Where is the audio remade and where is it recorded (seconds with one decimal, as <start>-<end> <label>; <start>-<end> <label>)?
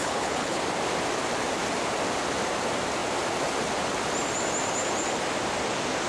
0.0-0.6 remade; 0.6-6.1 recorded